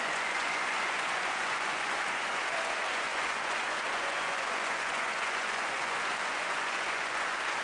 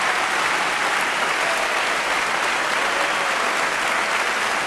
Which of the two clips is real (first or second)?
second